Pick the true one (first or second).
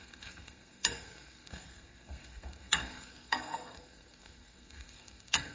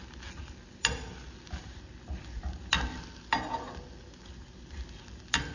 second